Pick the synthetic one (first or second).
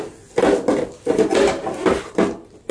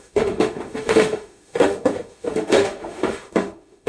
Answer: second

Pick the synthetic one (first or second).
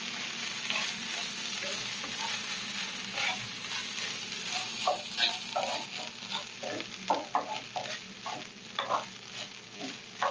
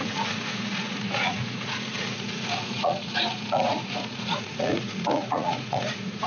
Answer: second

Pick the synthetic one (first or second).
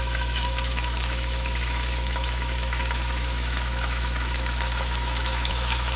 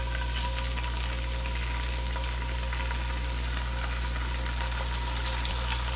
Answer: first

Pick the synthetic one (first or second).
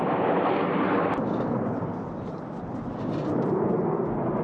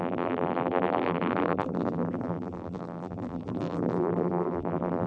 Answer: second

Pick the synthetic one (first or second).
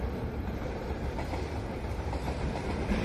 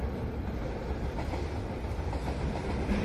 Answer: first